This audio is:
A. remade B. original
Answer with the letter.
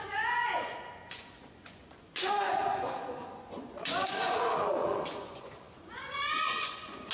A